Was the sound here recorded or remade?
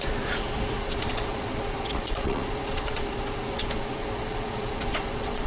remade